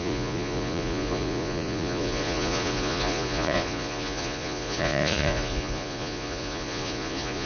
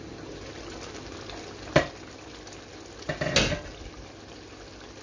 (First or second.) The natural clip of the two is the second